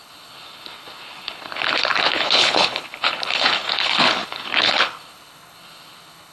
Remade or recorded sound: remade